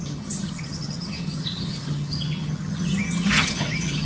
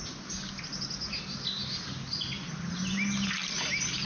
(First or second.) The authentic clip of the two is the second